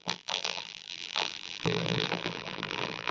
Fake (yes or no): yes